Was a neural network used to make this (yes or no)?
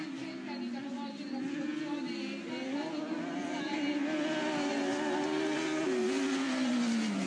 no